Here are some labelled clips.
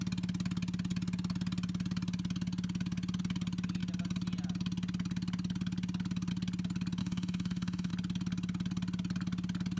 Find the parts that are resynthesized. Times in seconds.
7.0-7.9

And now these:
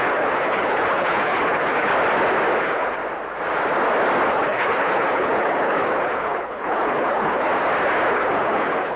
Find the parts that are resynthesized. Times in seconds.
0.0-1.9; 2.6-3.0; 4.3-7.5; 8.1-9.0

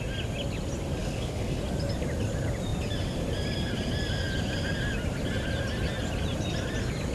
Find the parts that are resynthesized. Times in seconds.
1.0-1.6

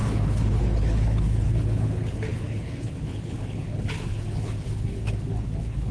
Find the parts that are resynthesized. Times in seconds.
0.0-5.9

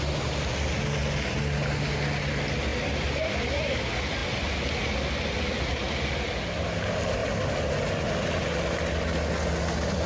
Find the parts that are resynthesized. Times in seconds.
2.7-3.3

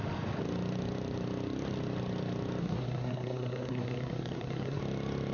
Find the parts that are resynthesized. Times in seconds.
2.6-4.8

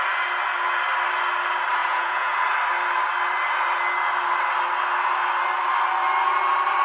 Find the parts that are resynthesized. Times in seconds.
1.8-2.4

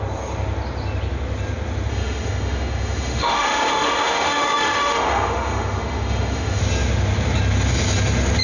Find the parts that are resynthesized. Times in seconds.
1.9-6.6